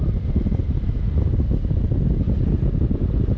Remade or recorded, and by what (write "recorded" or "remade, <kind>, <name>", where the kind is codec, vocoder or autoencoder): recorded